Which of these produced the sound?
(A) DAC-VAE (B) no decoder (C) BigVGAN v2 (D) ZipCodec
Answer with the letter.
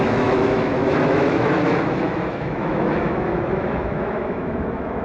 A